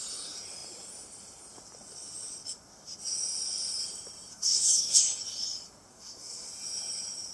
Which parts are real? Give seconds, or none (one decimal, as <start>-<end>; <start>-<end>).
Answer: 0.0-4.3; 5.0-5.9; 6.5-7.3